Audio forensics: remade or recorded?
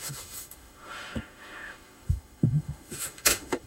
remade